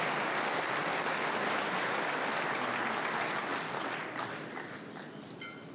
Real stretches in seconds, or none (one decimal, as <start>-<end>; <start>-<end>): 0.0-0.8; 1.4-3.5; 4.4-5.7